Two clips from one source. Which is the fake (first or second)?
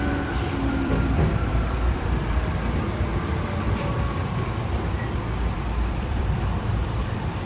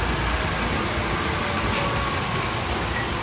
first